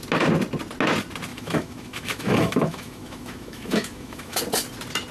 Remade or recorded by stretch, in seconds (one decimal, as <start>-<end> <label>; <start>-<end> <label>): 0.0-1.3 recorded; 1.3-4.4 remade; 4.4-5.1 recorded